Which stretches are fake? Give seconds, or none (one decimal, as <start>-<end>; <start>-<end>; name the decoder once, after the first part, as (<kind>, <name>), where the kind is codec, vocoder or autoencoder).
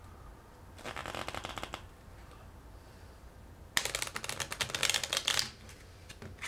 none